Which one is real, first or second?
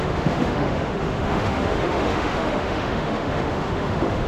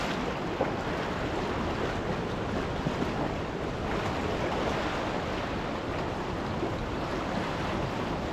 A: second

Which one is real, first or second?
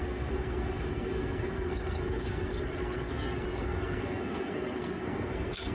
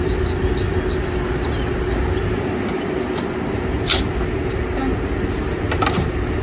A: second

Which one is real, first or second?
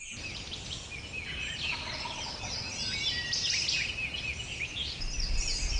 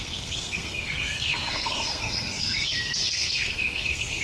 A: first